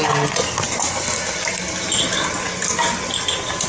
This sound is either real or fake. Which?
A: real